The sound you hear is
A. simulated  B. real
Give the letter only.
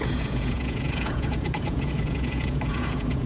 A